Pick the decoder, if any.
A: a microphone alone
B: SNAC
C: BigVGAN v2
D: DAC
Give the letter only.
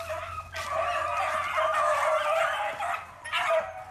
A